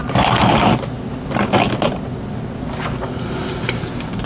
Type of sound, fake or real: real